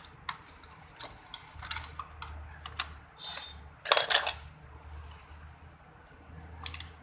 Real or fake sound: real